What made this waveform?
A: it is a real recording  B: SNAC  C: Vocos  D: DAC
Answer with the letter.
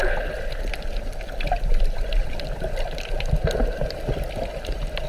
A